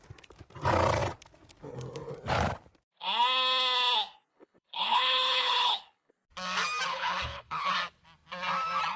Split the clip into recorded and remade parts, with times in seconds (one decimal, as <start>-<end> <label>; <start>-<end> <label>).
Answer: 0.0-4.3 recorded; 4.3-6.1 remade; 6.1-6.9 recorded; 6.9-7.7 remade; 7.7-9.0 recorded

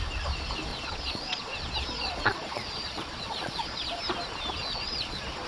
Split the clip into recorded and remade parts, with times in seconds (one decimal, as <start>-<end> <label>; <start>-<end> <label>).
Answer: 0.0-0.7 recorded; 0.7-4.0 remade; 4.0-4.6 recorded; 4.6-5.5 remade